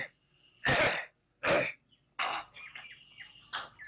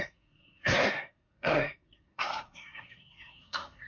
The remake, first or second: second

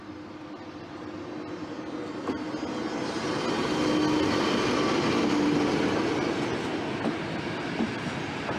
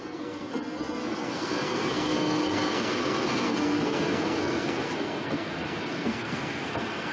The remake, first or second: second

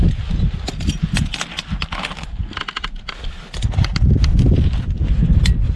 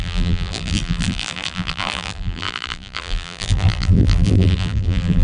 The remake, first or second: second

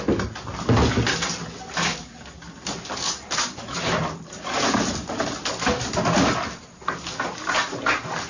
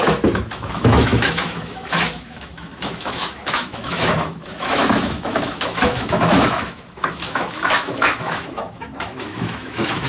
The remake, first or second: second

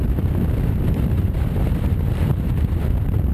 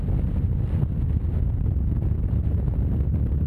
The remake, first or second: first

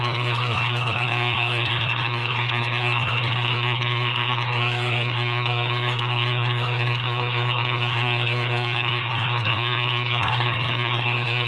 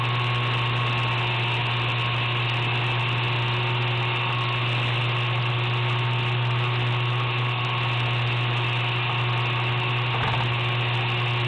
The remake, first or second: first